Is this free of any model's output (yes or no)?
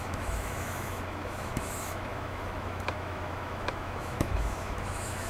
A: no